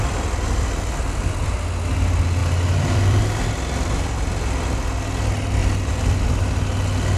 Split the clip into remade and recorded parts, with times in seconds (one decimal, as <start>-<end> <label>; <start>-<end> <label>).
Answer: 0.0-2.4 recorded; 2.4-3.2 remade; 3.2-5.6 recorded; 5.6-6.1 remade; 6.1-7.2 recorded